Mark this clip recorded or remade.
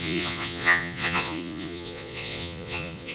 remade